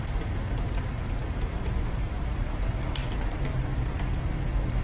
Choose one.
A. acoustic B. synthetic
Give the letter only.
B